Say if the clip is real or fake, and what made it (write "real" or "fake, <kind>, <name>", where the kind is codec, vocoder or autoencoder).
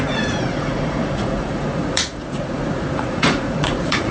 fake, vocoder, Vocos